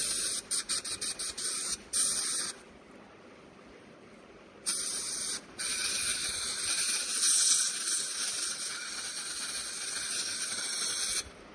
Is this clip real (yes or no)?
yes